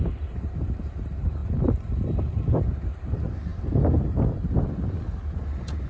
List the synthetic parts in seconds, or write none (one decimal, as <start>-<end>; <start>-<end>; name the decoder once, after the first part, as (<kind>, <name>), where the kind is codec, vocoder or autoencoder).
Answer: none